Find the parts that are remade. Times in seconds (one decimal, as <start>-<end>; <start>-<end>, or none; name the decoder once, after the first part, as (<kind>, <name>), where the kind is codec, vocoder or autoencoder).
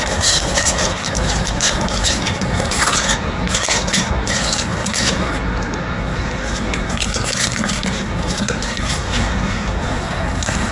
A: 0.0-10.7 (codec, SNAC)